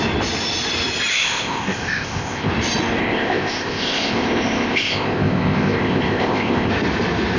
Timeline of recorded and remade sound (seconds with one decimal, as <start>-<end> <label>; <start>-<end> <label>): 0.0-1.1 recorded; 1.1-2.5 remade; 2.5-3.0 recorded; 3.0-6.7 remade; 6.7-7.4 recorded